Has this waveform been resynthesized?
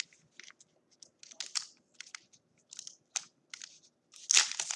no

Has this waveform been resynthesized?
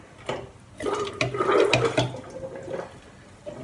no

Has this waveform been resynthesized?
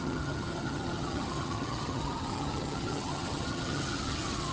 yes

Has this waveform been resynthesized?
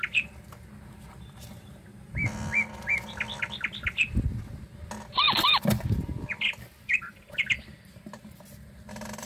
no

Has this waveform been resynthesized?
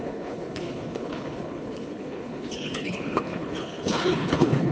yes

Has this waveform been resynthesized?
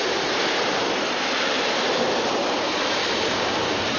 yes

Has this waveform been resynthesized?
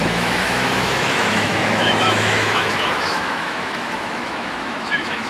yes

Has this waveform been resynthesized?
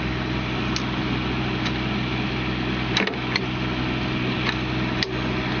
no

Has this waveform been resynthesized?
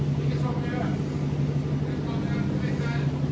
no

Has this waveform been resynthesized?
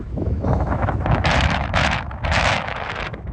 yes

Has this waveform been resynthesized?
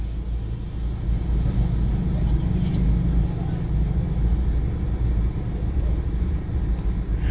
no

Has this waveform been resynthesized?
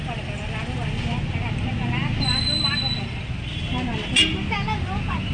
no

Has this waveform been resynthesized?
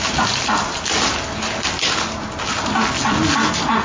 no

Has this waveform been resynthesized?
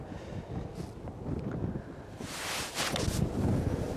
no